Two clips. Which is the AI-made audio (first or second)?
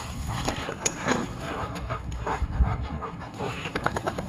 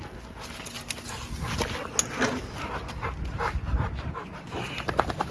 first